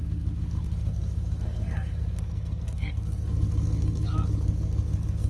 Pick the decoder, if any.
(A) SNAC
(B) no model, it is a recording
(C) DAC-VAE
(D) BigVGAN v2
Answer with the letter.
A